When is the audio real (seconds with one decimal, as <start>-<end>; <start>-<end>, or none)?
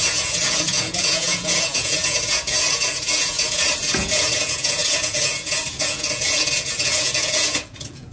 none